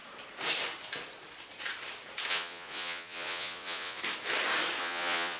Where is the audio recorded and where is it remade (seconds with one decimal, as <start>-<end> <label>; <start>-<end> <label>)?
0.0-2.3 recorded; 2.3-4.0 remade; 4.0-4.8 recorded; 4.8-5.4 remade